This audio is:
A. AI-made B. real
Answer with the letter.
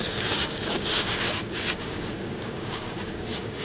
A